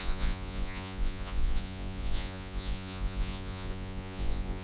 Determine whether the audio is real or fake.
fake